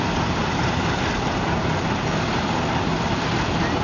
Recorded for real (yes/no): yes